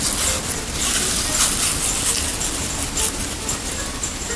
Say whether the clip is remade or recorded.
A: recorded